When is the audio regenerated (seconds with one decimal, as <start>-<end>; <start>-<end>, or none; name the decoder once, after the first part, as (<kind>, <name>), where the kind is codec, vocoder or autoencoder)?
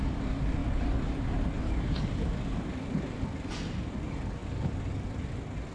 none